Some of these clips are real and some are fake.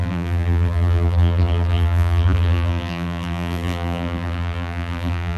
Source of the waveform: fake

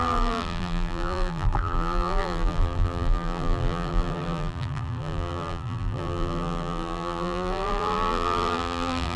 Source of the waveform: fake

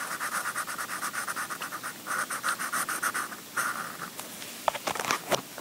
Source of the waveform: real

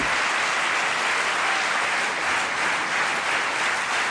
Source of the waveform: real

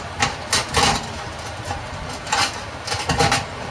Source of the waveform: real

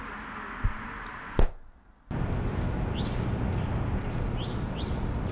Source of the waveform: real